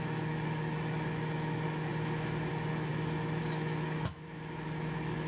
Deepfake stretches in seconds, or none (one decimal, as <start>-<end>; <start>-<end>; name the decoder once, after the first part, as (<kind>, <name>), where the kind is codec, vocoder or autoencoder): 0.0-1.9 (autoencoder, DAC-VAE); 2.5-5.3